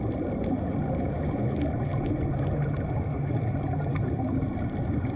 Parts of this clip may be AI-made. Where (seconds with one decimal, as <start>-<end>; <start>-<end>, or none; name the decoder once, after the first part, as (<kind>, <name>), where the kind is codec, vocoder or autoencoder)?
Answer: none